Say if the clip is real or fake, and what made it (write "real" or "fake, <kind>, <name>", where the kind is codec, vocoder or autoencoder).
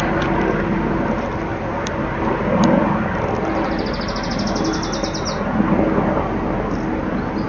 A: real